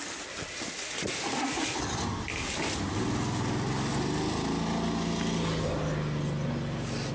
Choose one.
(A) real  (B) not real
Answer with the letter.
A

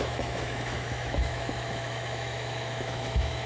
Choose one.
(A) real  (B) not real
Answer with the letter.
B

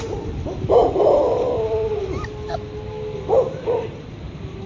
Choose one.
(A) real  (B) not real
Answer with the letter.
A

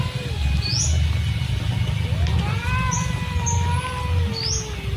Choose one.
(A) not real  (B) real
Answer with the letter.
B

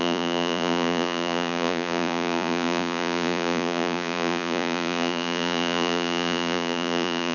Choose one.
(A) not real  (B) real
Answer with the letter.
A